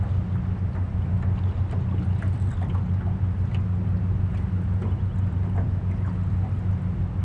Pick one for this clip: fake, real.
real